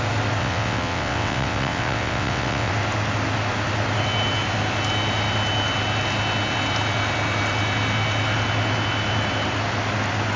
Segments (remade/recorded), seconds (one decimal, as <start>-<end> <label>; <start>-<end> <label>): 0.0-0.4 recorded; 0.4-2.7 remade; 2.7-10.4 recorded